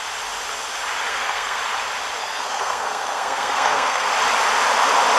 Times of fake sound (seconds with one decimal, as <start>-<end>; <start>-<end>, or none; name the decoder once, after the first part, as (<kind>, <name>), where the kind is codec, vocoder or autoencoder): 1.1-1.6 (codec, SNAC); 2.2-4.1